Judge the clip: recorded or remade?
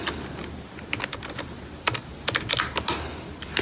recorded